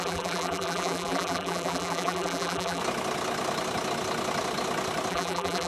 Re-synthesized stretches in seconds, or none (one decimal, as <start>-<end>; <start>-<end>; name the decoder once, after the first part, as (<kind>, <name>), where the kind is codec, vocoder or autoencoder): 0.0-2.8 (vocoder, BigVGAN v2); 5.1-5.7